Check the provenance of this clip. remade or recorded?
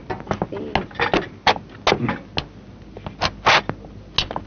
recorded